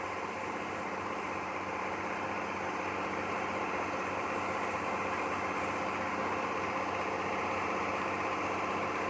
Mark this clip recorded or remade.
recorded